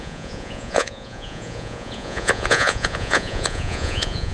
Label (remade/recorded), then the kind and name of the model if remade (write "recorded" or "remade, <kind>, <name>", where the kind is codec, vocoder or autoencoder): remade, vocoder, Vocos